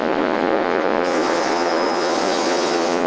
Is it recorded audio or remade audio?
remade